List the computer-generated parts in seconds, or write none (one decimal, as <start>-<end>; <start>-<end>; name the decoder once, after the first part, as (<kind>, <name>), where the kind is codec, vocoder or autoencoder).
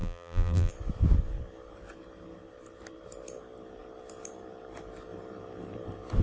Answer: 0.0-0.7 (vocoder, BigVGAN v2)